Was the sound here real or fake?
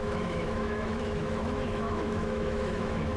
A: fake